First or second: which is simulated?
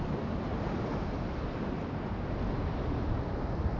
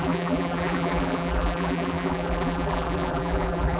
second